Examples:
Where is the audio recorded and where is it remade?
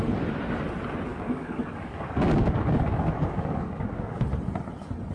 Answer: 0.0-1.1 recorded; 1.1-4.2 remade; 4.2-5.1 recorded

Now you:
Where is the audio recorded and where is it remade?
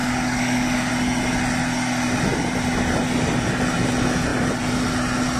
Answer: 0.0-0.9 remade; 0.9-5.4 recorded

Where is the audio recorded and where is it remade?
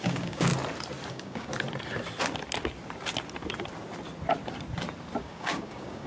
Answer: 0.0-0.5 remade; 0.5-1.1 recorded; 1.1-1.5 remade; 1.5-5.2 recorded; 5.2-6.1 remade